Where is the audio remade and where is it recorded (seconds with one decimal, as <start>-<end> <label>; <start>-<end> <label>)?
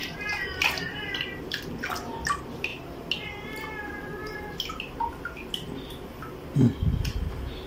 0.0-7.7 recorded